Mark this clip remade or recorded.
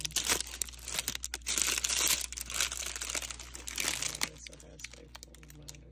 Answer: recorded